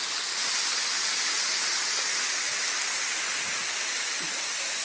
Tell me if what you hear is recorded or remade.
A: recorded